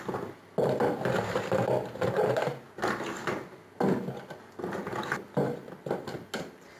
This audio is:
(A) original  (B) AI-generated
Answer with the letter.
A